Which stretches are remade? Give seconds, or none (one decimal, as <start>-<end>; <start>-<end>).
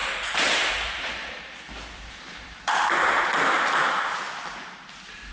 0.0-3.2